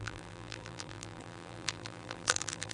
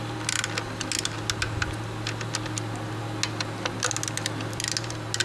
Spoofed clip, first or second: first